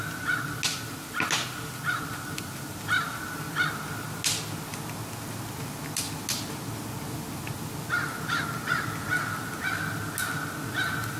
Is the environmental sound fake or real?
real